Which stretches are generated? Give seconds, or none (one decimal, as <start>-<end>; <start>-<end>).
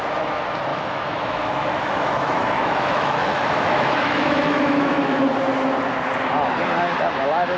0.7-5.2